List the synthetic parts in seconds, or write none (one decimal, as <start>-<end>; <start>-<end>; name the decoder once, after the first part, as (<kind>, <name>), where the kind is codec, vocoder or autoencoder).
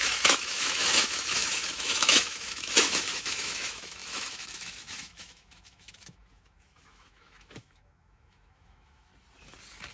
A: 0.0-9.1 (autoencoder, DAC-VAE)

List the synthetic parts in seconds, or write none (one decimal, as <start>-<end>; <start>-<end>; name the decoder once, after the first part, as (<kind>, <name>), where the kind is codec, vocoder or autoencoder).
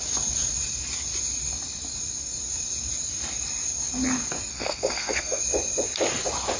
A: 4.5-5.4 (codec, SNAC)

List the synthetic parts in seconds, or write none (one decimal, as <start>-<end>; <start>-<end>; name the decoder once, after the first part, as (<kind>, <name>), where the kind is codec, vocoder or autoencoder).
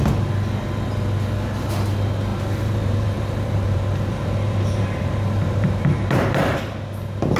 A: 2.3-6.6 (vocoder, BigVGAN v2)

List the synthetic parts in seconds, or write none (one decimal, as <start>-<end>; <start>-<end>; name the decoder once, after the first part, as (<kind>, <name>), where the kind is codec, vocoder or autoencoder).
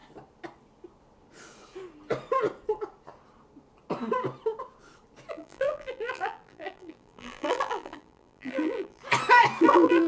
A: 5.3-9.0 (vocoder, BigVGAN v2); 9.6-10.1